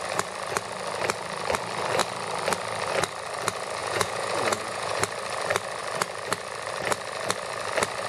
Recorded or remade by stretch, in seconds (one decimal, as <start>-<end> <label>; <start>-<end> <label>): 0.0-3.8 recorded; 3.8-5.0 remade; 5.0-8.1 recorded